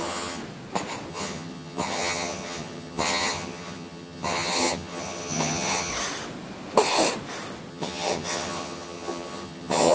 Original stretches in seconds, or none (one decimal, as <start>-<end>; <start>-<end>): 0.4-1.1; 5.9-7.7